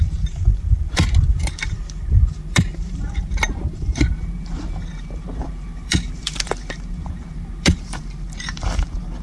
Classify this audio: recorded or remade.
remade